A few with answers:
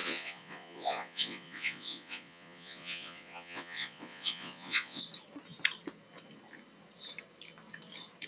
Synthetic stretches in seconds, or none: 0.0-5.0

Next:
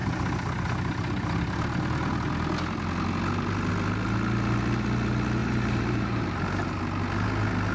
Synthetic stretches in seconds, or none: 5.4-6.8

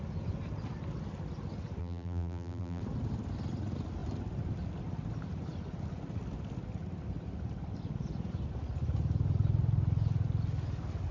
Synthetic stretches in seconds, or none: 1.8-2.8

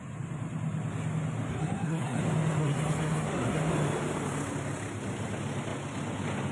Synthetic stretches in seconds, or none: 1.5-2.2; 2.6-3.7

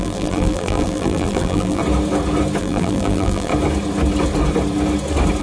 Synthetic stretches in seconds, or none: 0.0-1.8; 2.6-3.5

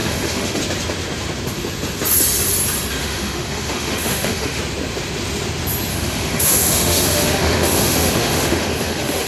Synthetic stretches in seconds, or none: 0.0-0.6; 3.0-4.6; 5.9-9.3

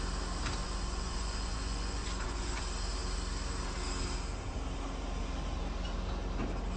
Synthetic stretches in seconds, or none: 0.6-2.6

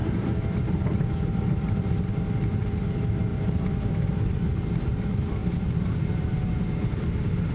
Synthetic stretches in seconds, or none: 0.0-7.5